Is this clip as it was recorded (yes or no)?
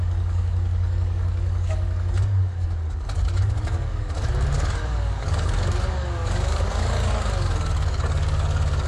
no